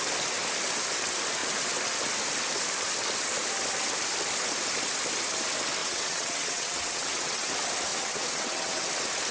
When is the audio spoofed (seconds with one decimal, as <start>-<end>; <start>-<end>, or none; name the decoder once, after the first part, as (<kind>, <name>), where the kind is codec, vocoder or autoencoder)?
5.8-7.5 (vocoder, WaveNeXt); 7.9-8.8